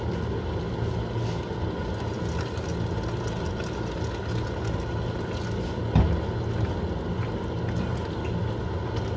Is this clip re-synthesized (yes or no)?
no